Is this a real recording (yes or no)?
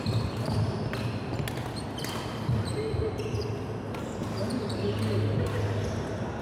yes